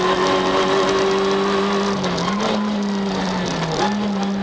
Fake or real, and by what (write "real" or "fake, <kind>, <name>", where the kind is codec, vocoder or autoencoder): real